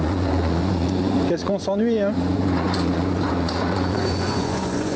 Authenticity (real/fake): fake